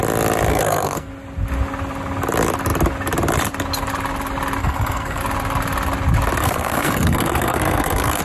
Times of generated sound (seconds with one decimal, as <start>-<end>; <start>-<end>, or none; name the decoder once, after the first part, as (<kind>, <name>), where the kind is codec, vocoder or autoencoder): 0.5-1.1 (codec, SNAC); 4.6-5.2; 6.4-8.2